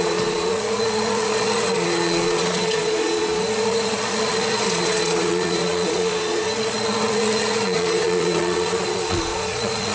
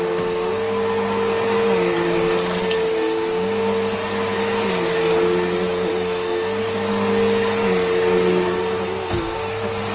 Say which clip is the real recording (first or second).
second